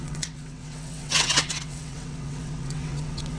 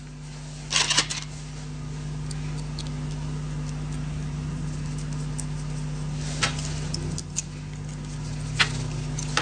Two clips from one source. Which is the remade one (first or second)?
first